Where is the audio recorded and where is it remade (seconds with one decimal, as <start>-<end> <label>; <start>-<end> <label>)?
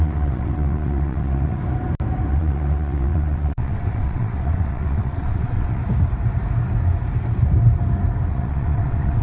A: 0.0-1.6 remade; 1.6-2.3 recorded; 2.3-5.8 remade; 5.8-8.3 recorded; 8.3-9.2 remade